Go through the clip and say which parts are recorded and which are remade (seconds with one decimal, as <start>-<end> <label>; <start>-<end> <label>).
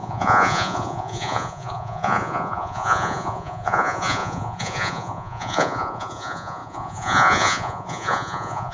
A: 0.0-8.7 remade